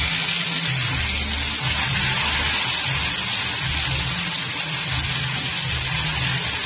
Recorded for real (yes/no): yes